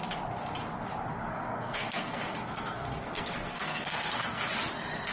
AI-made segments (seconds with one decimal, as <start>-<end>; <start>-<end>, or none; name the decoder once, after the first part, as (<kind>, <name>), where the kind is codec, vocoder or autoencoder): 1.3-4.4 (codec, SNAC)

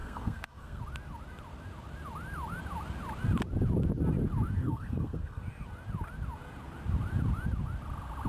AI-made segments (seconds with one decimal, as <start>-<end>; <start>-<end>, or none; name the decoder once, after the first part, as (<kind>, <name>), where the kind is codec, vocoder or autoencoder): 0.0-0.8 (codec, SNAC); 4.6-5.4

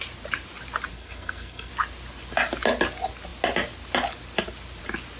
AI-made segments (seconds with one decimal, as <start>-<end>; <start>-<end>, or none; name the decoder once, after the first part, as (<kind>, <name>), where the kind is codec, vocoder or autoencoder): 0.9-1.7 (codec, SNAC)

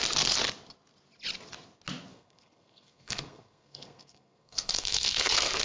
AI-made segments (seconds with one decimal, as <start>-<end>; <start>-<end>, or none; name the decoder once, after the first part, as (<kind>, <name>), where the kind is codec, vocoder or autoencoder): 2.1-5.6 (codec, SNAC)

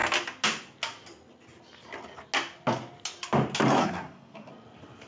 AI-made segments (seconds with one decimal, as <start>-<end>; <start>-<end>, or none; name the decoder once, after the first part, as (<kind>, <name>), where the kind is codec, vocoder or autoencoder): 3.8-4.5 (codec, SNAC)